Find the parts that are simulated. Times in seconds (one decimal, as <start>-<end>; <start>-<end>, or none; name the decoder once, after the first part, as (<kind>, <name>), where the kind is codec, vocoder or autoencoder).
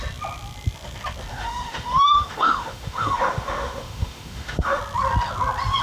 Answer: 1.3-4.8 (autoencoder, DAC-VAE)